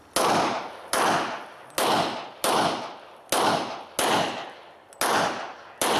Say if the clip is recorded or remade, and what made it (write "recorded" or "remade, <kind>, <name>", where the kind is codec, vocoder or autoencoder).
recorded